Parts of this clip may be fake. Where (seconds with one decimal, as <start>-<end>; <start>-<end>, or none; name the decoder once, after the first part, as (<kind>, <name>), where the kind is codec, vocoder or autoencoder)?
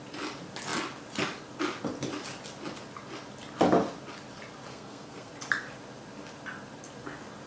4.7-5.3 (codec, SNAC)